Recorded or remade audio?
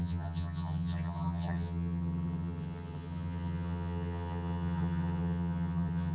remade